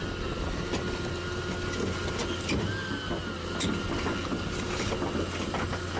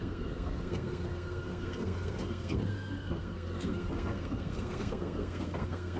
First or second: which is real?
first